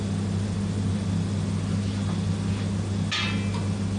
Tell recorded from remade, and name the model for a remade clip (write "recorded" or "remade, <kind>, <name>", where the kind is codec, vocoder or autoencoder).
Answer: recorded